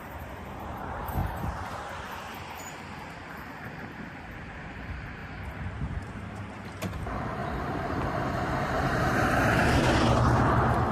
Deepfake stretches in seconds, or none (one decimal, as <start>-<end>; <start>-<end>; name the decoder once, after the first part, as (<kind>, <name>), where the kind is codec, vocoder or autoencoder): 0.0-5.2 (vocoder, BigVGAN v2); 5.7-10.9